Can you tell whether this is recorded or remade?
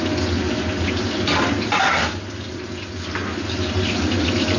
recorded